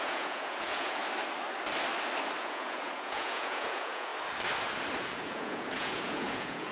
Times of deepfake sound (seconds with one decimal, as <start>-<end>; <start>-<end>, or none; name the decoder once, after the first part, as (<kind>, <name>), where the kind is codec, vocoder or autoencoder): 0.0-1.0 (vocoder, Vocos); 2.4-4.1; 5.0-6.7